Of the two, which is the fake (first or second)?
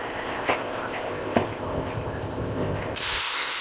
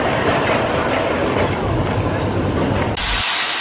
first